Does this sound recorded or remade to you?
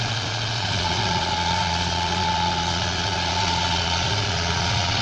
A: remade